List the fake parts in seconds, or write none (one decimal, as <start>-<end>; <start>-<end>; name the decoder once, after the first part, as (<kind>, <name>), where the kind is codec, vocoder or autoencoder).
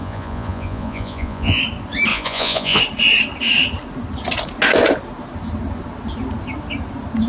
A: 0.0-1.6 (vocoder, Vocos); 2.1-2.8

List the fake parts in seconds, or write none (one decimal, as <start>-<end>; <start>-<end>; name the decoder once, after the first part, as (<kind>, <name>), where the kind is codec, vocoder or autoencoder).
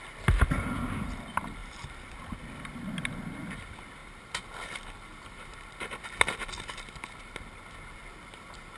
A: 4.0-5.8 (vocoder, BigVGAN v2)